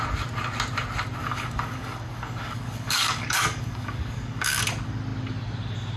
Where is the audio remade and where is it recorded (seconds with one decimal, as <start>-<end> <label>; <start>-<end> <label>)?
0.0-1.2 recorded; 1.2-4.6 remade; 4.6-6.0 recorded